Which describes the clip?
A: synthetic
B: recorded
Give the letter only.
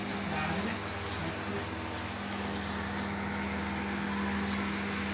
B